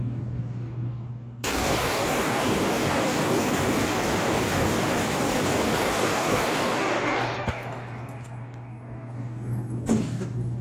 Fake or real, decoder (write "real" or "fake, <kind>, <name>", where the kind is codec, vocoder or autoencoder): fake, codec, DAC